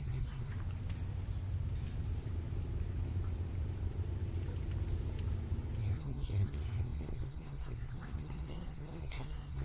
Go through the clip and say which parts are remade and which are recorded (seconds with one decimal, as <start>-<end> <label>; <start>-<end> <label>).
0.0-0.5 remade; 0.5-5.8 recorded; 5.8-9.6 remade